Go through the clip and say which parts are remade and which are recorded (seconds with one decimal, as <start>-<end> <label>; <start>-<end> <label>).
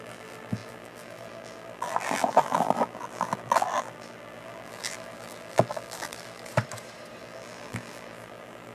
0.0-6.5 remade; 6.5-7.2 recorded; 7.2-8.7 remade